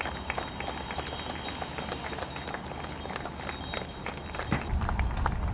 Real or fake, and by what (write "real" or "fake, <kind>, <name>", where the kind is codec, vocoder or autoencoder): real